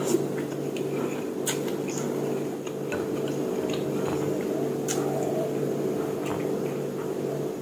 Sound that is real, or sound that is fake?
real